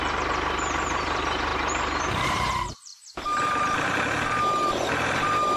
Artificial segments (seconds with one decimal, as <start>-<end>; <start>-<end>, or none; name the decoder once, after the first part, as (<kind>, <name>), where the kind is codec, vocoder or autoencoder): 0.0-5.6 (vocoder, BigVGAN v2)